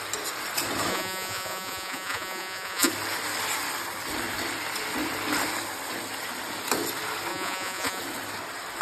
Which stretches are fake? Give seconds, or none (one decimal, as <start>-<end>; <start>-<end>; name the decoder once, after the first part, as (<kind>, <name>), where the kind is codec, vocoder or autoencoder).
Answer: 0.9-2.9 (vocoder, Vocos); 7.3-8.0